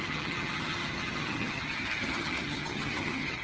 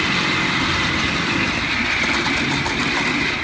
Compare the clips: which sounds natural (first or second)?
second